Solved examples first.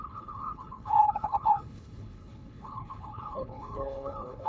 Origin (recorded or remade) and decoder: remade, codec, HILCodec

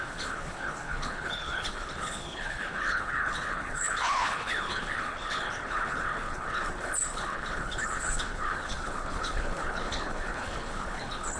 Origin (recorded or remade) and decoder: remade, codec, HILCodec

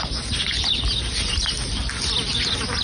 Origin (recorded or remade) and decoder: recorded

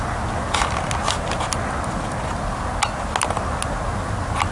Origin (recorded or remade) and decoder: recorded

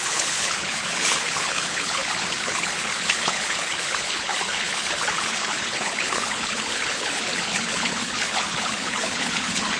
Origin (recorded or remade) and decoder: remade, codec, HILCodec